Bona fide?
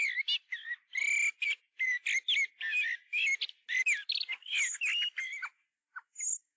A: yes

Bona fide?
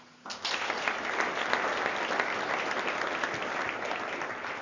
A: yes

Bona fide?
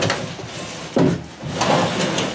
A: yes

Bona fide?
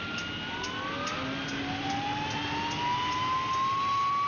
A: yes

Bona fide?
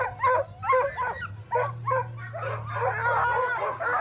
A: yes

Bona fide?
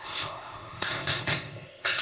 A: no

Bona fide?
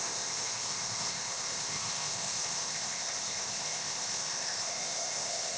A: no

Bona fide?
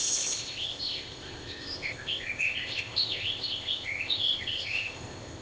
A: no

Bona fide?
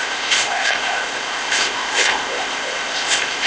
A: no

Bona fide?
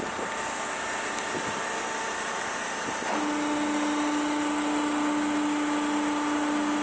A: yes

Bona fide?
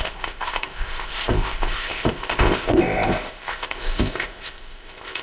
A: no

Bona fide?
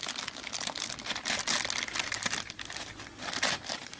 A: yes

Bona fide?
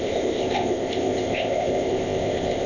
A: no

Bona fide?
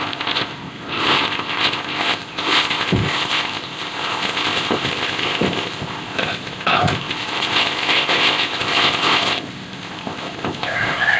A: no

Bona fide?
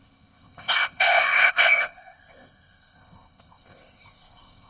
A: no